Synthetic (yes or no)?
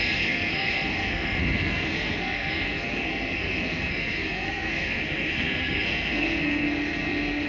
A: yes